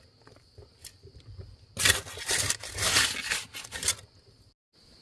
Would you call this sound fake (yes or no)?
no